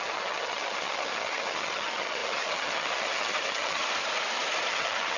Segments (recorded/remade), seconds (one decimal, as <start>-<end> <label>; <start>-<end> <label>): 0.0-3.8 remade; 3.8-4.7 recorded; 4.7-5.2 remade